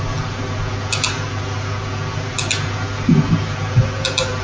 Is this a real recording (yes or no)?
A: yes